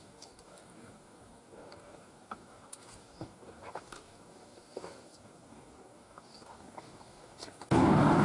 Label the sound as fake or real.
fake